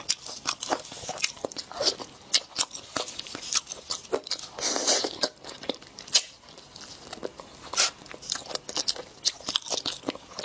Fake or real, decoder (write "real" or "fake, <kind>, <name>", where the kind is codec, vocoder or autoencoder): real